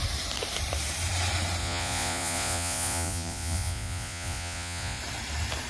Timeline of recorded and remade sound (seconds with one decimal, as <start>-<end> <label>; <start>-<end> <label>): 0.0-1.6 recorded; 1.6-5.0 remade; 5.0-5.7 recorded